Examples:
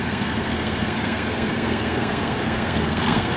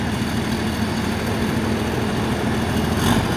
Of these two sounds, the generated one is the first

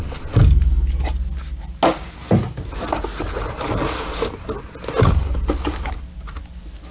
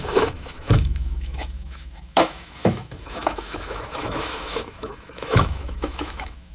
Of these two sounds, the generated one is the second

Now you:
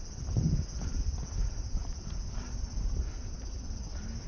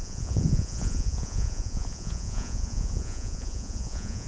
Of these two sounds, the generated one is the second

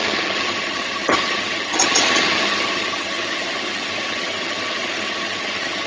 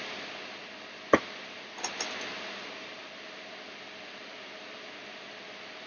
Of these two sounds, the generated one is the first